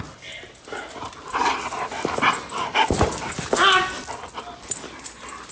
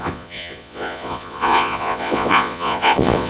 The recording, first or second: first